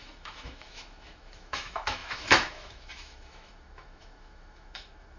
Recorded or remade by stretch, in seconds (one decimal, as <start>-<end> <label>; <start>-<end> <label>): 0.0-5.2 remade